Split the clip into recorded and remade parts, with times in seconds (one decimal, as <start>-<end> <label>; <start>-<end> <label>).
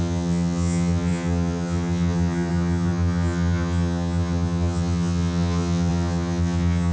0.0-6.9 remade